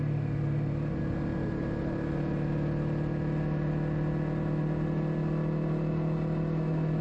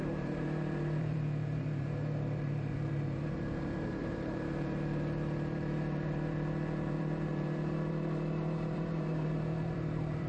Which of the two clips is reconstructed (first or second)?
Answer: second